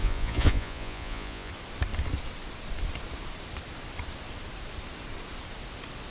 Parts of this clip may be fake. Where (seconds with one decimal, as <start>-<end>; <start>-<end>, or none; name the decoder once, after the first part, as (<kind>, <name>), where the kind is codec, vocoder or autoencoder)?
0.0-1.5 (vocoder, Vocos)